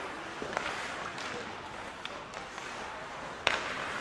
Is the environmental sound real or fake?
real